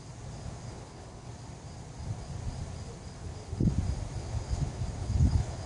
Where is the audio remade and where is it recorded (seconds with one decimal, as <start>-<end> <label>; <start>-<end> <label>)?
0.0-0.7 recorded; 0.7-1.3 remade; 1.3-3.2 recorded; 3.2-3.7 remade; 3.7-4.2 recorded; 4.2-5.7 remade